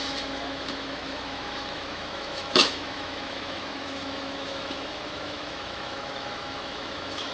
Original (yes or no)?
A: no